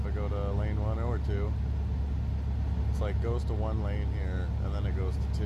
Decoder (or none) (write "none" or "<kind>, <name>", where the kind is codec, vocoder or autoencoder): none